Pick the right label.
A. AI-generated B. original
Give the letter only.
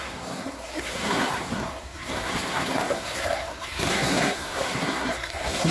A